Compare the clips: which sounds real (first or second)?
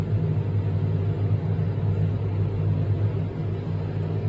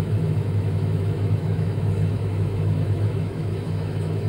first